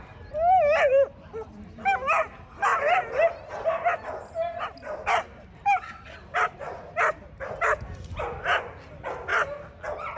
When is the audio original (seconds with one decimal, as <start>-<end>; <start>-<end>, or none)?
0.0-2.7; 7.2-10.2